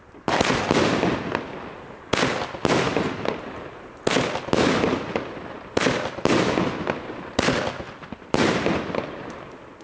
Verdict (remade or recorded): recorded